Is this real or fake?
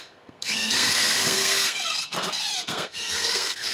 fake